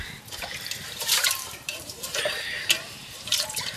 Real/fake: fake